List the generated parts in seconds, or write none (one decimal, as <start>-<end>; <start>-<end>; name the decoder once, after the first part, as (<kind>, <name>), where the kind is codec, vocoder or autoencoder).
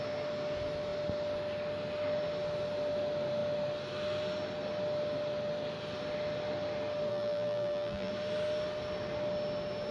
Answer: 7.1-8.1 (vocoder, BigVGAN v2)